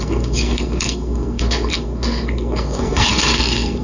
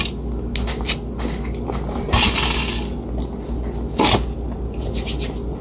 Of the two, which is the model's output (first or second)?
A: first